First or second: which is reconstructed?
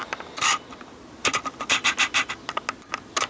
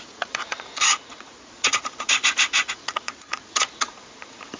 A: second